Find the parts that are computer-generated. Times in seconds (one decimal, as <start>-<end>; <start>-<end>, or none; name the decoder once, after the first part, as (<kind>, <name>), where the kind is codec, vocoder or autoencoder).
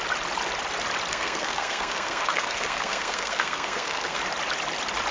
1.1-4.2 (codec, SNAC)